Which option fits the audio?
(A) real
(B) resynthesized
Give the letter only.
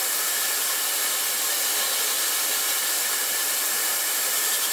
A